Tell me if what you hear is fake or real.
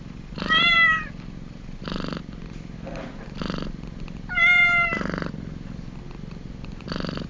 real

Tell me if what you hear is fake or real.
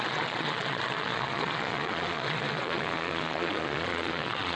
fake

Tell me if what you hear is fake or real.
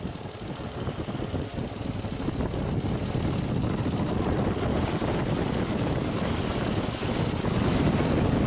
real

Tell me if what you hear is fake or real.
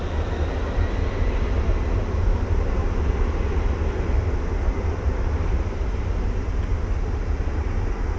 real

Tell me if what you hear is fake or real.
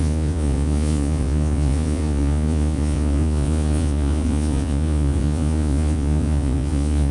fake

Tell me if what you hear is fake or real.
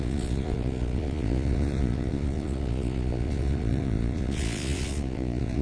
fake